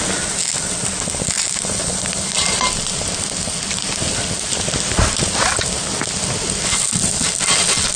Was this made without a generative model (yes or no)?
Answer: yes